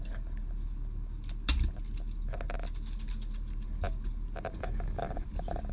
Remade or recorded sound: recorded